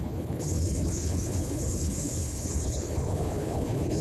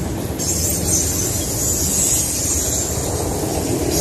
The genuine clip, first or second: second